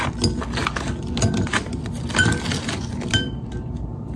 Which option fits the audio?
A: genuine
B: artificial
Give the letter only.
A